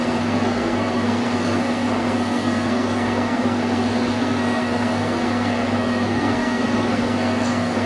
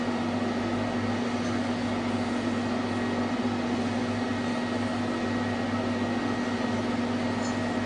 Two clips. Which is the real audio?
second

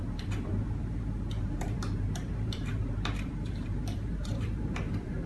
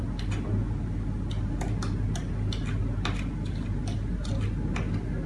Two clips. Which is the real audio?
second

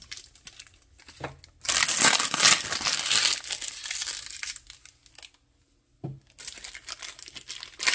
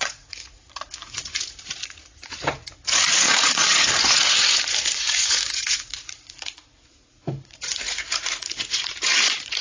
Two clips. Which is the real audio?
first